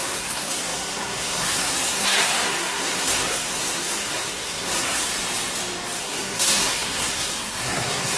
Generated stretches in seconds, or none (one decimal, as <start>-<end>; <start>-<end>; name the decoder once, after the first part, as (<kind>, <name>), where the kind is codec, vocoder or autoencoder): 0.0-5.1 (codec, SNAC); 6.0-8.2